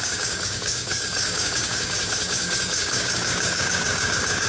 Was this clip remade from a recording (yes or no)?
yes